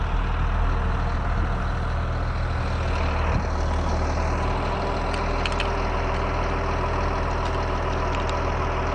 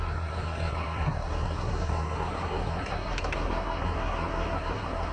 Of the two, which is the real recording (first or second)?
first